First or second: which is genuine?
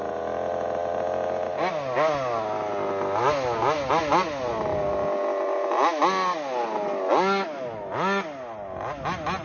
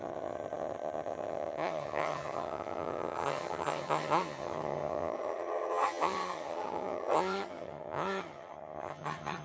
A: first